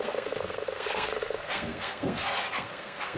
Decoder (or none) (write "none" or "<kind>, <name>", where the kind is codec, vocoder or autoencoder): codec, SNAC